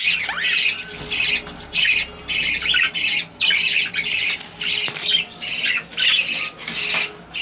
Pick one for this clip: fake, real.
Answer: real